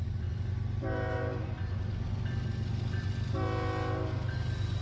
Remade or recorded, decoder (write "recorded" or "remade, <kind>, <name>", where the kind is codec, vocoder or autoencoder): recorded